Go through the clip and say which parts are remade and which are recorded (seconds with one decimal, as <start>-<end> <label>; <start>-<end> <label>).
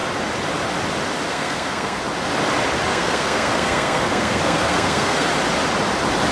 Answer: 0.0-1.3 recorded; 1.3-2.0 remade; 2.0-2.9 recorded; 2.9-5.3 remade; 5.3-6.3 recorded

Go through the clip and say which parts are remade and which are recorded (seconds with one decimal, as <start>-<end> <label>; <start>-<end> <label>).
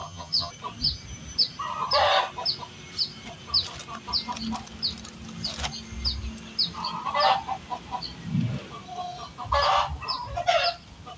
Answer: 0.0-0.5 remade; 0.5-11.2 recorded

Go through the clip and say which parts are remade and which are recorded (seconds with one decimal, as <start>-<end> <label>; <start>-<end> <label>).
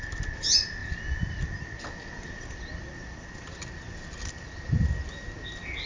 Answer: 0.0-5.9 recorded